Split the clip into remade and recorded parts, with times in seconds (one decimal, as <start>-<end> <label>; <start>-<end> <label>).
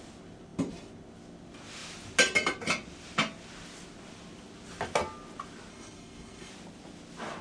0.0-5.7 recorded; 5.7-6.5 remade; 6.5-7.4 recorded